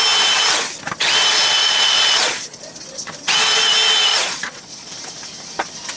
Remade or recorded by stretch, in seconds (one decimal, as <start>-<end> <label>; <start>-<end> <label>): 0.0-1.6 recorded; 1.6-2.6 remade; 2.6-4.1 recorded; 4.1-4.9 remade; 4.9-6.0 recorded